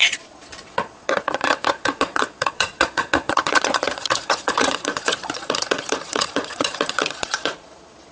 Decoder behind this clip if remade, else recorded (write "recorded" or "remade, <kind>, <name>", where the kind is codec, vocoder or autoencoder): remade, vocoder, Vocos